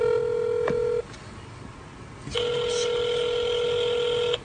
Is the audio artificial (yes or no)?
no